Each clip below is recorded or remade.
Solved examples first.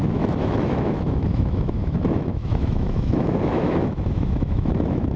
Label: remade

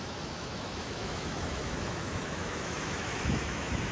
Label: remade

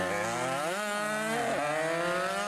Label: recorded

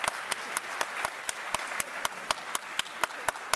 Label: recorded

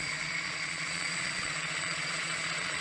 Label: remade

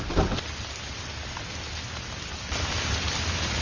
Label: recorded